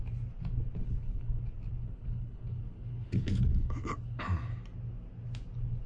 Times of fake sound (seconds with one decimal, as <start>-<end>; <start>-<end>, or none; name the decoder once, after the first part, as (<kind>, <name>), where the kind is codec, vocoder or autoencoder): 0.8-1.4 (codec, HILCodec); 1.8-4.2